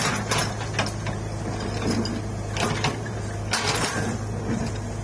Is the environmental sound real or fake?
real